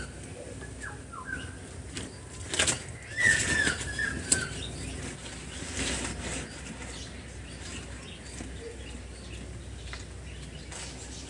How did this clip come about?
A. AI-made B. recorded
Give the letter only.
B